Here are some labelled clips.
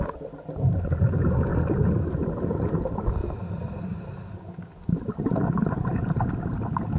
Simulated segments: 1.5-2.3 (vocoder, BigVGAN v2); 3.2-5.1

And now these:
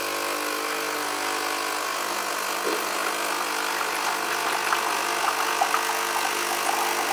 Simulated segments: none

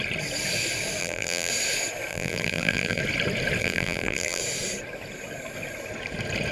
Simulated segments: 1.0-1.5 (vocoder, BigVGAN v2); 2.1-3.0; 3.6-4.4

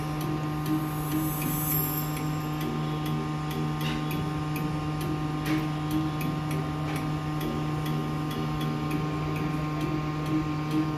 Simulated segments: none

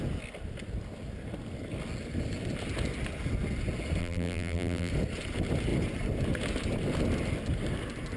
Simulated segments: 4.0-4.9 (vocoder, BigVGAN v2)

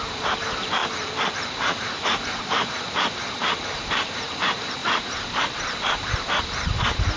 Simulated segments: 0.0-0.8 (vocoder, BigVGAN v2); 1.4-7.2

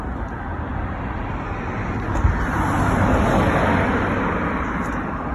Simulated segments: none